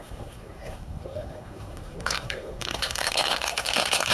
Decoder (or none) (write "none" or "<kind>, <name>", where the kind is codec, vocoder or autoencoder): codec, SNAC